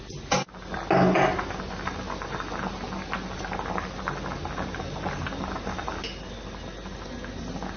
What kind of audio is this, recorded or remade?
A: recorded